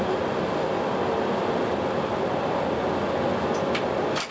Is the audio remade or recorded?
recorded